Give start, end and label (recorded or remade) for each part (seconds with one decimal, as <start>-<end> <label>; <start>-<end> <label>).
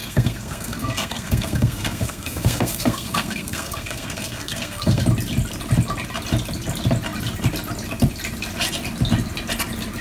0.0-5.0 remade; 5.0-10.0 recorded